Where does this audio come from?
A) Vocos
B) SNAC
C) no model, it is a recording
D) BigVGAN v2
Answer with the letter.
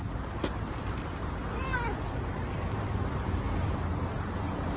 C